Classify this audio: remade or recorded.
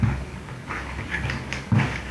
remade